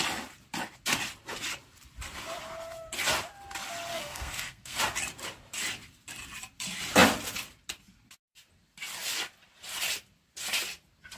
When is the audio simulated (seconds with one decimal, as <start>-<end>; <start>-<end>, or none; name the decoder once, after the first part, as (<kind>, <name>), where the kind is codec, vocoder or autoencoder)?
3.9-4.8 (codec, SNAC)